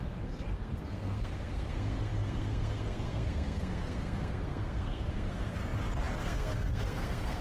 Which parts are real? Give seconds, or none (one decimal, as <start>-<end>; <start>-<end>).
5.6-6.2